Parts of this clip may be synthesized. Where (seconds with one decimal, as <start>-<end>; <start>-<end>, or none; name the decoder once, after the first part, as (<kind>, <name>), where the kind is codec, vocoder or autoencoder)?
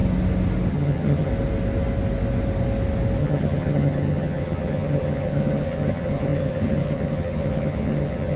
0.7-1.3 (vocoder, HiFi-GAN); 3.2-8.4